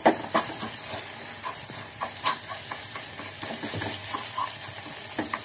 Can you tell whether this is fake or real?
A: real